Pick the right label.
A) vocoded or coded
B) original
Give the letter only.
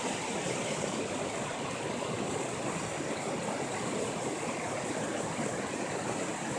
B